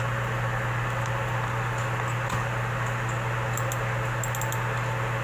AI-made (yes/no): no